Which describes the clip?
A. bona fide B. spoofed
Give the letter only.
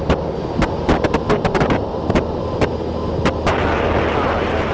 A